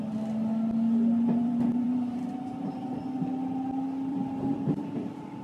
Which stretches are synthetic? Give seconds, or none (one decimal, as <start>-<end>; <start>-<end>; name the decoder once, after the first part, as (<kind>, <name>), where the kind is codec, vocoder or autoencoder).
1.4-2.7 (vocoder, BigVGAN v2); 4.1-5.4